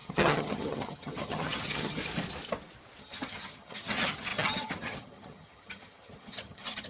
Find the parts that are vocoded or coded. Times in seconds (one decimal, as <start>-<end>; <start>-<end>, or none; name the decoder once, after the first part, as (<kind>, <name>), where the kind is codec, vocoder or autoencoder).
0.0-2.0 (vocoder, HiFi-GAN); 3.0-6.9